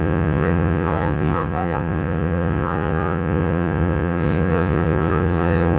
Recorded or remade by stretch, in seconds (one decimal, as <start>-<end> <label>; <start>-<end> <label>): 0.0-5.8 remade